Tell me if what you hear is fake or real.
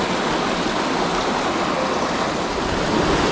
real